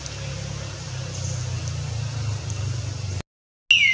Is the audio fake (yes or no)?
no